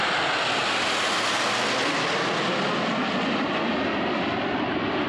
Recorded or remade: recorded